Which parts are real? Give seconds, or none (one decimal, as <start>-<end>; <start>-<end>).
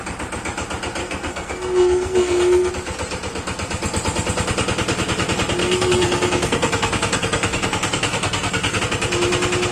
0.0-1.0; 2.7-5.6; 8.8-9.7